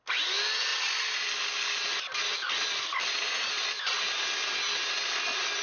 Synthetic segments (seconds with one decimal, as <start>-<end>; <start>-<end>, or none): none